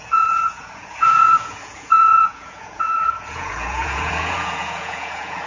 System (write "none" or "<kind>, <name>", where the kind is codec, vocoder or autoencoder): vocoder, Vocos